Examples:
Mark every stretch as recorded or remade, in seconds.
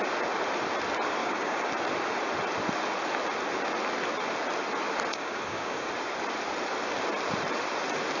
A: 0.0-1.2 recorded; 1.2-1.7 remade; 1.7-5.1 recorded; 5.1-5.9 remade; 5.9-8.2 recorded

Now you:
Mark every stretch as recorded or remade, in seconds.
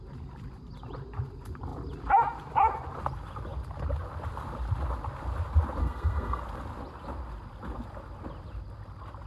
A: 0.0-5.8 recorded; 5.8-6.4 remade; 6.4-9.3 recorded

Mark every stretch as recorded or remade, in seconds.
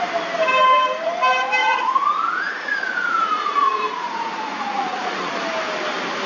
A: 0.0-1.6 recorded; 1.6-5.3 remade; 5.3-6.3 recorded